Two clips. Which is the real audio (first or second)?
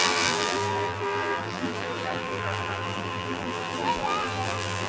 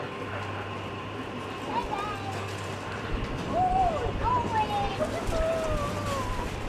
second